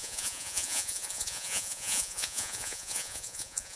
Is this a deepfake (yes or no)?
yes